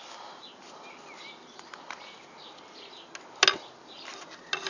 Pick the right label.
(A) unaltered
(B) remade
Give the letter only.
A